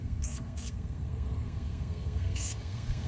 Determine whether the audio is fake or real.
fake